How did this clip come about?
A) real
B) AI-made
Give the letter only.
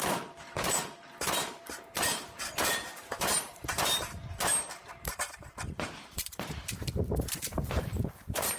B